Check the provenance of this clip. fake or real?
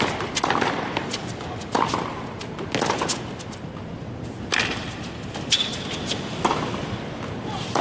real